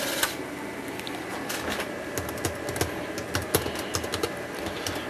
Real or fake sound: real